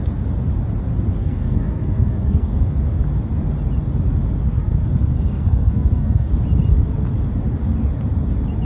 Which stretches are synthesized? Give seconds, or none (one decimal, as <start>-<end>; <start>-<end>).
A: 1.2-2.8; 4.5-6.3